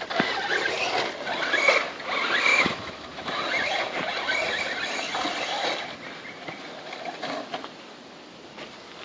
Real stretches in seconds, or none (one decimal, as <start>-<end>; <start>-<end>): 0.0-2.5; 3.4-9.0